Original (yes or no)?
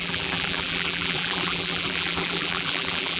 no